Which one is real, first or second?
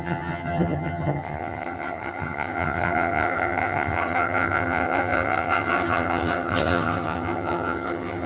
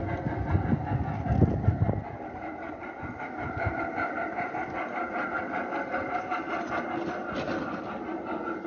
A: second